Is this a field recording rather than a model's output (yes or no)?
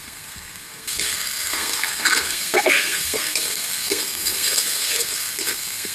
no